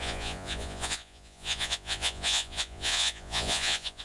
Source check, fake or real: fake